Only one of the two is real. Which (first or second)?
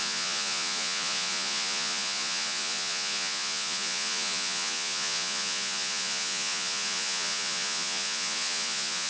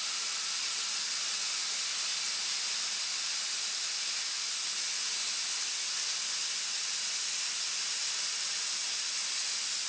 second